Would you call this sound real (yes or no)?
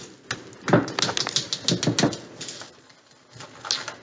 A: yes